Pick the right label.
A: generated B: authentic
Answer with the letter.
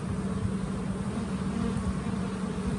B